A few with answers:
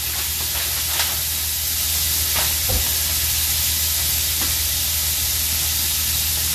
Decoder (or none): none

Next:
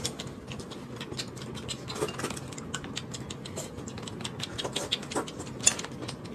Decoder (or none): none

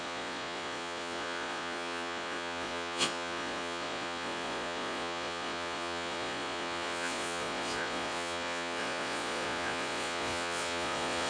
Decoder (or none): vocoder, Vocos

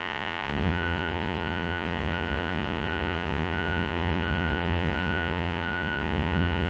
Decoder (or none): vocoder, Vocos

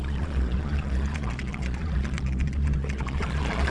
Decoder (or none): vocoder, Vocos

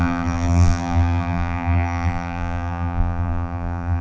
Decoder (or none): vocoder, BigVGAN v2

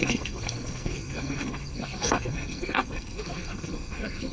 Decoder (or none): codec, SNAC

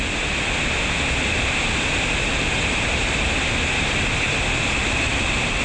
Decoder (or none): none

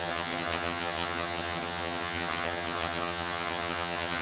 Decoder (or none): vocoder, HiFi-GAN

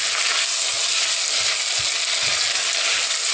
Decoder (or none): none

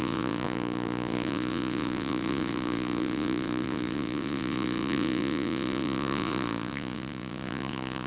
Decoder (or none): vocoder, Vocos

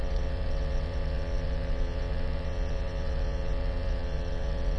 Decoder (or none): vocoder, WaveNeXt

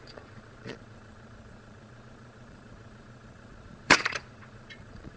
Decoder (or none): vocoder, Vocos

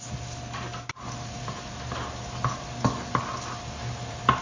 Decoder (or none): none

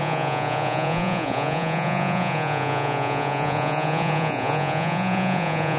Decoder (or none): vocoder, Vocos